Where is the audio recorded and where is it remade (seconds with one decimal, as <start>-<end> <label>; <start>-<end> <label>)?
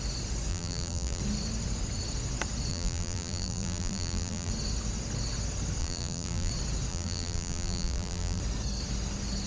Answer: 0.0-0.5 recorded; 0.5-1.2 remade; 1.2-2.7 recorded; 2.7-4.5 remade; 4.5-5.8 recorded; 5.8-6.5 remade; 6.5-6.9 recorded; 6.9-8.4 remade; 8.4-9.5 recorded